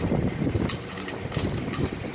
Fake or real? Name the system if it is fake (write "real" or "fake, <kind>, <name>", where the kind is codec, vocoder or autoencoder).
real